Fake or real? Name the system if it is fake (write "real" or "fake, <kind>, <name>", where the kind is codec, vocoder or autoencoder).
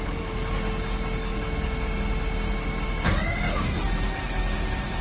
real